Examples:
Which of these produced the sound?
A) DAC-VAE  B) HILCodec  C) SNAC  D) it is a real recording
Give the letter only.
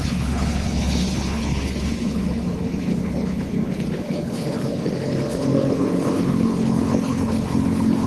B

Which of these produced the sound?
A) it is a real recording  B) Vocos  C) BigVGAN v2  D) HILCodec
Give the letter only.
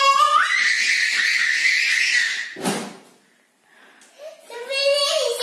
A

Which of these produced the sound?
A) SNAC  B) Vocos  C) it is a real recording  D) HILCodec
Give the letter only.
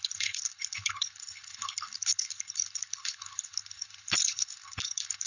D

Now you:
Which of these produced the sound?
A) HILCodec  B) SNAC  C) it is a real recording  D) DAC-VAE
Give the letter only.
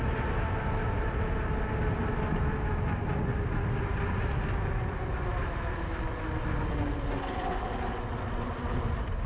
C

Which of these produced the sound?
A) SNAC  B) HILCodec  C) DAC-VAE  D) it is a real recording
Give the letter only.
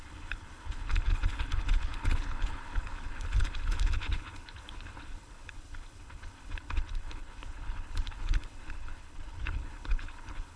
B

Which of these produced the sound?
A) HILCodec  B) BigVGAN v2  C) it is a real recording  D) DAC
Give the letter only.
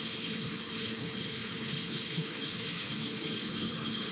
A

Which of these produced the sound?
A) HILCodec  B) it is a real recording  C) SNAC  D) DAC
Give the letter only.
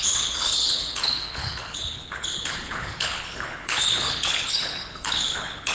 A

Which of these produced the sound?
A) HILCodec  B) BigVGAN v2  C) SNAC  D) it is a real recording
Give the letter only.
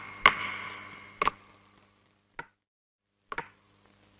D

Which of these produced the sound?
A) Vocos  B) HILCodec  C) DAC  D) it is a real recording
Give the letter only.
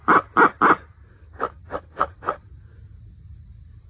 D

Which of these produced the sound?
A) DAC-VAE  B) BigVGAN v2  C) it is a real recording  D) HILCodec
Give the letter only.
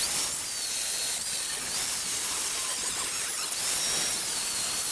C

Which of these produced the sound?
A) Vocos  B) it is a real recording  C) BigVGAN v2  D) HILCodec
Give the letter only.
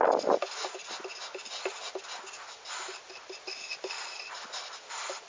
B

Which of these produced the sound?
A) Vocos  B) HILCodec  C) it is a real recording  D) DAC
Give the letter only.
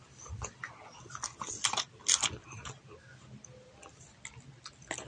C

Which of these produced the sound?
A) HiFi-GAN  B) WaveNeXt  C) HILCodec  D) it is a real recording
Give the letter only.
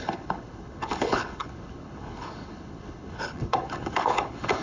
C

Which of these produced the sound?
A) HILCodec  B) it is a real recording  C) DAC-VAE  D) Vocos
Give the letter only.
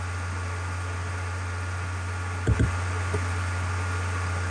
B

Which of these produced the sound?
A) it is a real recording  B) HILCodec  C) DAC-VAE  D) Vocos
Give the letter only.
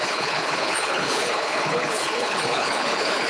B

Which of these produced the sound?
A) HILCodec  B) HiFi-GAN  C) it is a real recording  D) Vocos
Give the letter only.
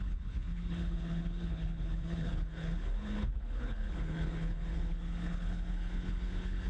A